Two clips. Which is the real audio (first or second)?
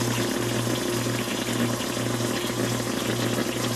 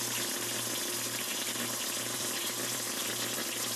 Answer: first